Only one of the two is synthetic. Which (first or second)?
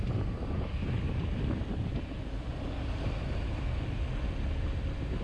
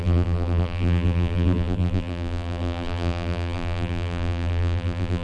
second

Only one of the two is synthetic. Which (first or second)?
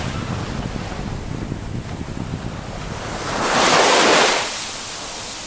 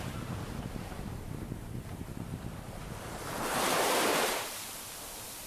second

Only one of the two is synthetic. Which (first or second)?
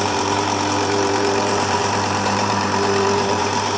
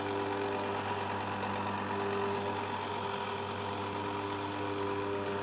first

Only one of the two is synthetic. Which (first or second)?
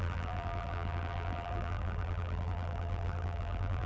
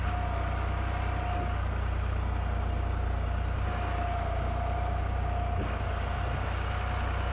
first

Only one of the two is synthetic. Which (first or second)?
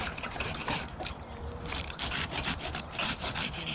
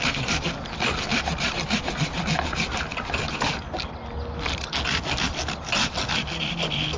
first